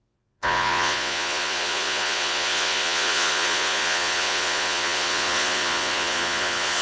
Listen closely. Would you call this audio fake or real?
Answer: fake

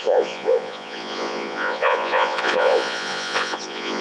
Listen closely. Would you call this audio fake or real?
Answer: fake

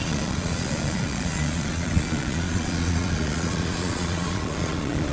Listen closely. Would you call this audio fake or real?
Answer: fake